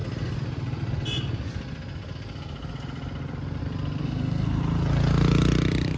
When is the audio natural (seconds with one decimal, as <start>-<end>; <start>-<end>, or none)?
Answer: 0.0-4.0; 4.6-6.0